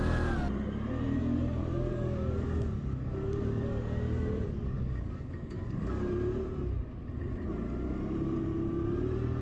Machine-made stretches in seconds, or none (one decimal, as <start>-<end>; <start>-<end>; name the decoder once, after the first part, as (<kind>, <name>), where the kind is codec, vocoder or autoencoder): 1.2-6.1 (codec, DAC)